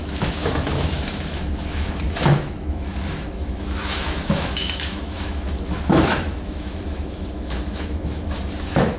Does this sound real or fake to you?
fake